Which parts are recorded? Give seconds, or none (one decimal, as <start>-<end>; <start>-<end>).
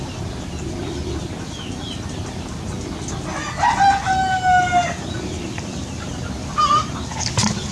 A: 0.0-7.7